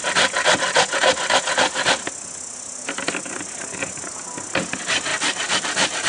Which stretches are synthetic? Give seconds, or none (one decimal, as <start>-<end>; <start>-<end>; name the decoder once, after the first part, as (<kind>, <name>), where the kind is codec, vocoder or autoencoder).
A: 5.1-6.1 (vocoder, BigVGAN v2)